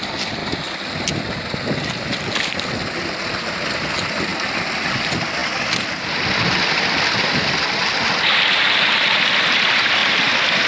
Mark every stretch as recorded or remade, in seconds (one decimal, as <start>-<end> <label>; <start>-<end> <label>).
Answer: 0.0-10.7 recorded